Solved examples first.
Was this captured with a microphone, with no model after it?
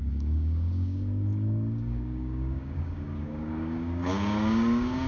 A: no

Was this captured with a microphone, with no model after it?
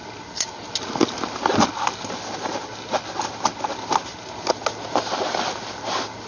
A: yes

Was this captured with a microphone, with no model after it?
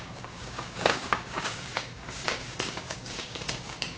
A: no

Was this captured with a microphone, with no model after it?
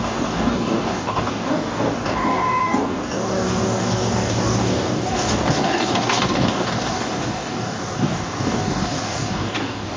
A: no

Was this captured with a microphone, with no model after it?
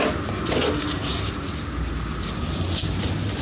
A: yes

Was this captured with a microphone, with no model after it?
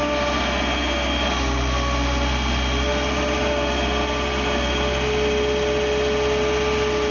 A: yes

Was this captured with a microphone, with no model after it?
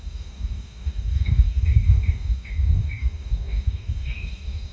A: no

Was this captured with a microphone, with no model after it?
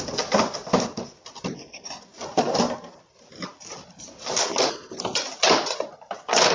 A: yes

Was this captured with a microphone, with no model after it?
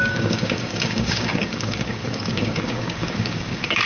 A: no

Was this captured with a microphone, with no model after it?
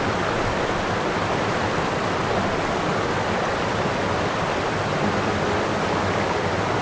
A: yes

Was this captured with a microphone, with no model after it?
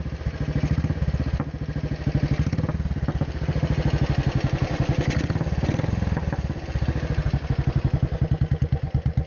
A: yes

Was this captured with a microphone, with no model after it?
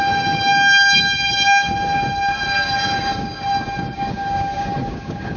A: no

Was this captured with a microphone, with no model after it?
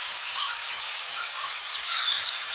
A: no